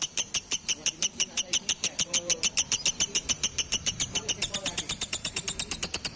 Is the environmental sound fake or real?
fake